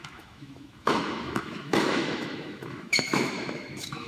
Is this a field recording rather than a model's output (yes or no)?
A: no